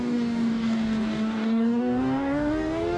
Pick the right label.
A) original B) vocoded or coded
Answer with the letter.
B